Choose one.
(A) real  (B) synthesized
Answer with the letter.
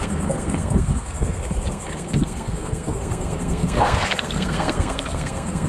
B